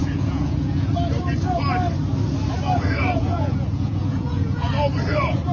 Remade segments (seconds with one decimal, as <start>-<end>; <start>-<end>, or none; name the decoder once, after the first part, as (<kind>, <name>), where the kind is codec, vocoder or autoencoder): 0.0-0.9 (vocoder, Vocos); 3.2-4.7